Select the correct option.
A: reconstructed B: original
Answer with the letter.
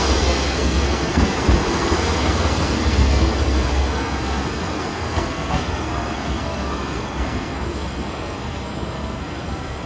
A